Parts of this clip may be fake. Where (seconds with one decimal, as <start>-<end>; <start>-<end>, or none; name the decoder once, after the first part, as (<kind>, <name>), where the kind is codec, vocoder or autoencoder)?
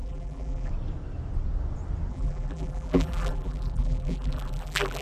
0.0-0.7 (vocoder, BigVGAN v2); 2.1-5.0